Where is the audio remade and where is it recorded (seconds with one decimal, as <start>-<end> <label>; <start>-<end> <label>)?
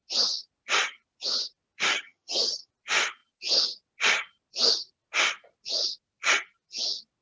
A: 0.0-1.9 recorded; 1.9-2.7 remade; 2.7-7.2 recorded